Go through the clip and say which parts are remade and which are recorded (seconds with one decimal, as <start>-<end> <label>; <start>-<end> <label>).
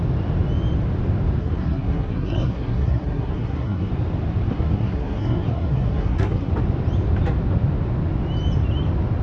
0.0-1.4 recorded; 1.4-3.9 remade; 3.9-4.5 recorded; 4.5-6.5 remade; 6.5-9.2 recorded